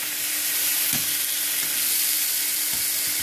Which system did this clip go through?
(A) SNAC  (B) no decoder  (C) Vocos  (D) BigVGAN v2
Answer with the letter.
B